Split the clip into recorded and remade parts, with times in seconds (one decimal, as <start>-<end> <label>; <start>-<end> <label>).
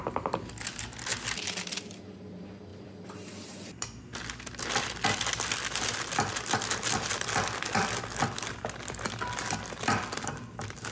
0.0-10.9 recorded